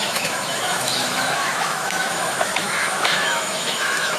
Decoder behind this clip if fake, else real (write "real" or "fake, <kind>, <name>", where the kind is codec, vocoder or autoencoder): fake, autoencoder, DAC-VAE